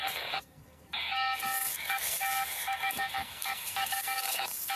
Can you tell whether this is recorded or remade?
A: remade